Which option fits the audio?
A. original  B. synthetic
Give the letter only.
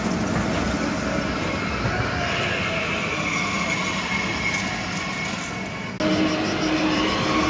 A